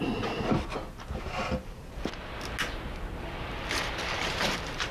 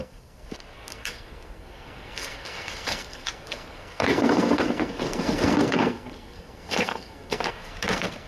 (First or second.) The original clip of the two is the first